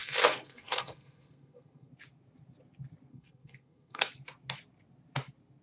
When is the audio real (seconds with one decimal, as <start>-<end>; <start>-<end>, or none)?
1.9-3.1; 4.1-5.6